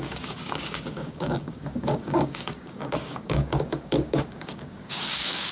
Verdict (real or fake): fake